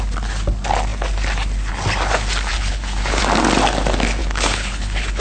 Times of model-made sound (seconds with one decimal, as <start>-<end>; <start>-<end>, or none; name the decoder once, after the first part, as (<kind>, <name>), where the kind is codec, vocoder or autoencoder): 2.5-3.2 (codec, HILCodec); 4.2-5.2